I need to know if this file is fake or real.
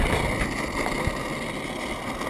real